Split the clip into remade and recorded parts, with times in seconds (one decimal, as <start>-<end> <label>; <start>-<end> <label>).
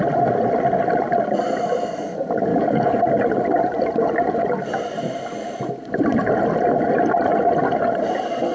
0.0-2.5 recorded; 2.5-3.0 remade; 3.0-8.5 recorded